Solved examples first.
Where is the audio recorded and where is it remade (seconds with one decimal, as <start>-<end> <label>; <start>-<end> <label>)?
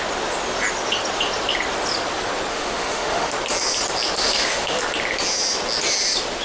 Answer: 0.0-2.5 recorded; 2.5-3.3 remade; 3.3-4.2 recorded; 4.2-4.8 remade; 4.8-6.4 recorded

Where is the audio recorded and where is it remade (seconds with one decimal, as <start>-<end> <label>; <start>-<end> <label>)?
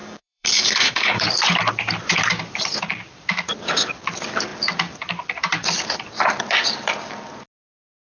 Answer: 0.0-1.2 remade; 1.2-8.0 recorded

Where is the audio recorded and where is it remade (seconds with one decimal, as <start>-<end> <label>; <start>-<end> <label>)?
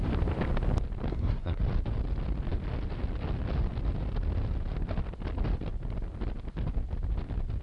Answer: 0.0-1.1 recorded; 1.1-1.6 remade; 1.6-7.6 recorded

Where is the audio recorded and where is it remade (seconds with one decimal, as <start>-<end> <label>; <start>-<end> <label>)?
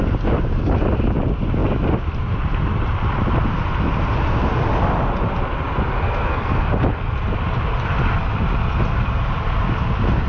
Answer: 0.0-6.0 recorded; 6.0-6.7 remade; 6.7-10.3 recorded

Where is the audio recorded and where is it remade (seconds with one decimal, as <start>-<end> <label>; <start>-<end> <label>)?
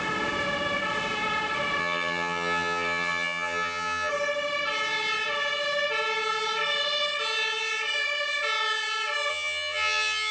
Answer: 0.0-1.8 recorded; 1.8-4.1 remade; 4.1-9.3 recorded; 9.3-10.3 remade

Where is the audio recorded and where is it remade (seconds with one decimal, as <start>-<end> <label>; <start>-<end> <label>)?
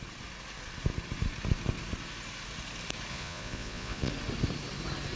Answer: 0.0-3.1 recorded; 3.1-4.1 remade; 4.1-5.2 recorded